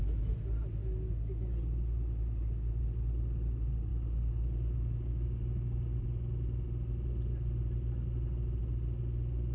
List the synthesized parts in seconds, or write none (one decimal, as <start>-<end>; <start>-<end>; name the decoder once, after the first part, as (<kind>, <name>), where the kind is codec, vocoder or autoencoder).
3.9-6.0 (codec, DAC)